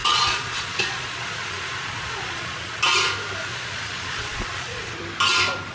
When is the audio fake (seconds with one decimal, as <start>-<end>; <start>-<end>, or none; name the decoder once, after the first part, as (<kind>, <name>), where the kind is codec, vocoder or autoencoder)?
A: 0.0-2.8 (vocoder, Vocos); 3.5-4.9